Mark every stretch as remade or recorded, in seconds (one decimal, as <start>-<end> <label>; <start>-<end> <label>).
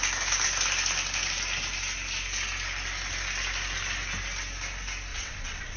0.0-5.1 recorded; 5.1-5.8 remade